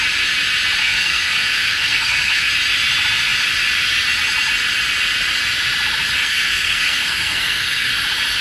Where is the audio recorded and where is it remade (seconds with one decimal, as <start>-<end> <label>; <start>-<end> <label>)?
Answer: 0.0-0.8 recorded; 0.8-2.5 remade; 2.5-6.2 recorded; 6.2-7.9 remade; 7.9-8.4 recorded